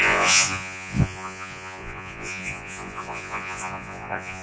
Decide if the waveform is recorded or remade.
remade